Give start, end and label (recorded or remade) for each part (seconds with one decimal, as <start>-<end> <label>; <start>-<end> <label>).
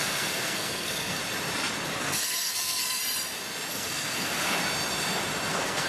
0.0-1.2 remade; 1.2-2.0 recorded; 2.0-3.0 remade; 3.0-3.7 recorded; 3.7-4.6 remade; 4.6-5.5 recorded; 5.5-5.9 remade